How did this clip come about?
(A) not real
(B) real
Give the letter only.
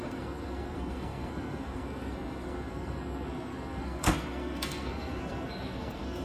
A